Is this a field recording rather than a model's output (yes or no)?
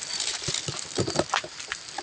yes